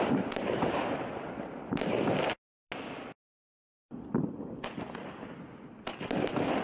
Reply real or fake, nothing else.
real